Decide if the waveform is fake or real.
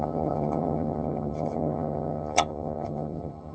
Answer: fake